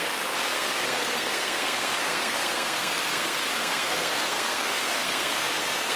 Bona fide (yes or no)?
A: no